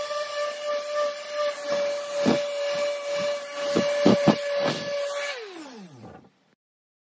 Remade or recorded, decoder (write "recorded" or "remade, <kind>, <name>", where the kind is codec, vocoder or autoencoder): recorded